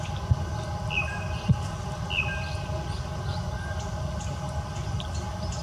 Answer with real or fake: real